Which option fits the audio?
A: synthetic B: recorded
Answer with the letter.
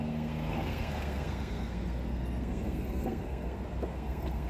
A